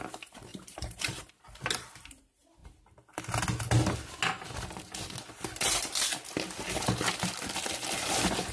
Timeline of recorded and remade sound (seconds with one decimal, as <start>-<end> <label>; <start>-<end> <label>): 0.0-0.5 recorded; 0.5-1.4 remade; 1.4-8.5 recorded